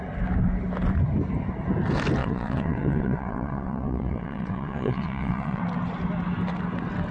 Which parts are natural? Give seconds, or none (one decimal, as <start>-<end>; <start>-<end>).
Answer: 0.0-2.2; 5.6-7.1